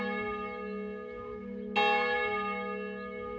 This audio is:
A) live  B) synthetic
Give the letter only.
A